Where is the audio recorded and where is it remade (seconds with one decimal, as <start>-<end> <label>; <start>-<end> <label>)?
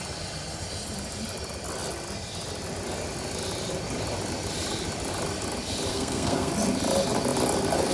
0.0-5.9 recorded; 5.9-6.5 remade; 6.5-7.9 recorded